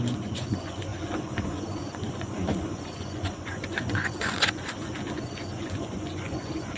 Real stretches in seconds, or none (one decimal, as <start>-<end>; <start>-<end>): none